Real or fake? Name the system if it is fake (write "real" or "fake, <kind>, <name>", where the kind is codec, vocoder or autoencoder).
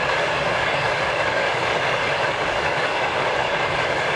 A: fake, codec, DAC